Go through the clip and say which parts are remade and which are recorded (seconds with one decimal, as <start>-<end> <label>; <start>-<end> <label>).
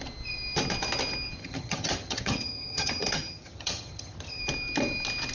0.0-1.4 recorded; 1.4-4.4 remade; 4.4-5.3 recorded